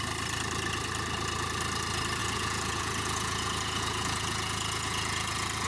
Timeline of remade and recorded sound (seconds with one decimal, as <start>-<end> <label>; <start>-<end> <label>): 0.0-2.2 recorded; 2.2-5.7 remade